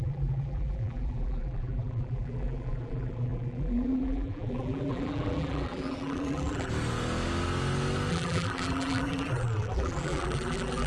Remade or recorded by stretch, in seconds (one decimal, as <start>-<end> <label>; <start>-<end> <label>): 0.0-6.7 remade; 6.7-8.1 recorded; 8.1-10.9 remade